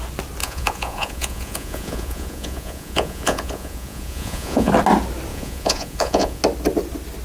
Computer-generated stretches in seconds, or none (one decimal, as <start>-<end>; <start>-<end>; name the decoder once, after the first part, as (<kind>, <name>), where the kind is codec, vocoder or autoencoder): 0.4-4.7 (vocoder, Vocos); 5.3-6.4